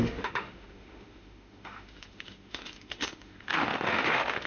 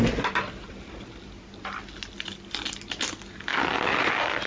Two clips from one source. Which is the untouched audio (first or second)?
second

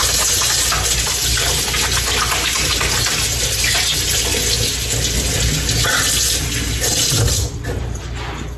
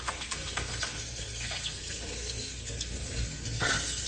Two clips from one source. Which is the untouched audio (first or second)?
first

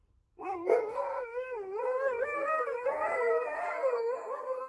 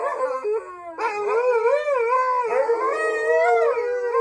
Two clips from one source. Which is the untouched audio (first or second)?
second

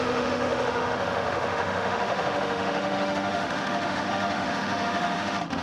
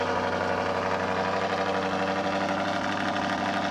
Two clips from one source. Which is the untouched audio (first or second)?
second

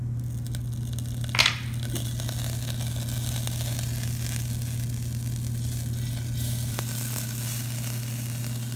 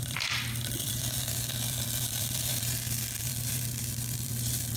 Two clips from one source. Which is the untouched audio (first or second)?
first